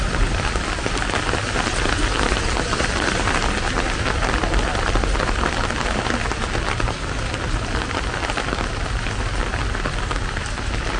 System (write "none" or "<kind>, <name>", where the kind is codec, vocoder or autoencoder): none